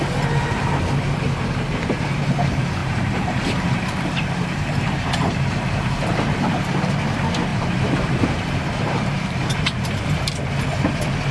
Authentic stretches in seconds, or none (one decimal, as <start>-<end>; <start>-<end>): 0.0-2.8; 6.9-7.5; 10.3-11.3